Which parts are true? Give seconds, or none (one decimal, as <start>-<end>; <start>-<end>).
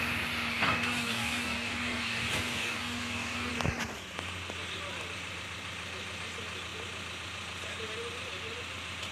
0.0-0.5; 3.5-9.1